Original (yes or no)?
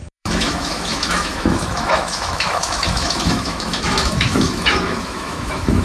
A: no